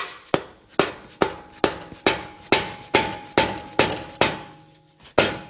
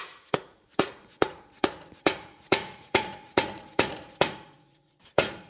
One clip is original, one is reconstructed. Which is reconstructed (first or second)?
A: second